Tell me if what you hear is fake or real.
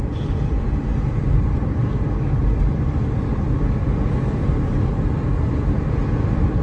real